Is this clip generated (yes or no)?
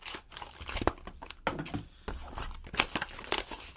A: no